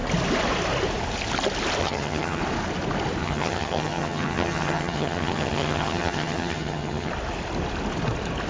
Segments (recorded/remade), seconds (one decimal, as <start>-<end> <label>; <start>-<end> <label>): 0.0-1.8 recorded; 1.8-2.4 remade; 2.4-3.2 recorded; 3.2-7.1 remade; 7.1-8.5 recorded